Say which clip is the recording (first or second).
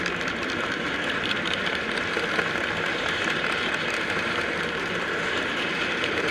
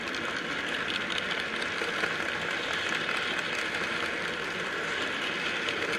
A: second